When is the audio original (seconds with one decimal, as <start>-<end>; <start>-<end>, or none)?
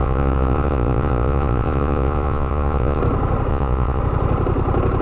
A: 3.0-3.5; 4.0-5.0